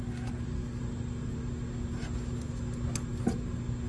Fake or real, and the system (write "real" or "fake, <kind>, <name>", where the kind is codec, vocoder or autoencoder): real